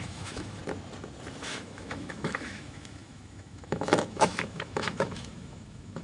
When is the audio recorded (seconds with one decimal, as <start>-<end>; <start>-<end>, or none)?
0.6-1.4

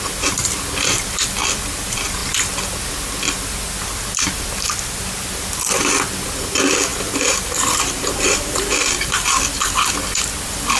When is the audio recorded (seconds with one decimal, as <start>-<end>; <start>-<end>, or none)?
0.0-6.9; 9.9-10.8

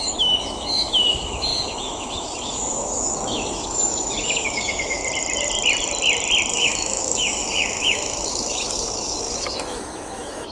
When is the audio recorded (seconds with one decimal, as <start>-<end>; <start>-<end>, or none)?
5.0-6.5